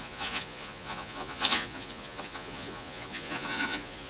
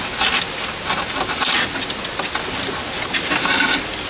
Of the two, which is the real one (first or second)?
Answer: second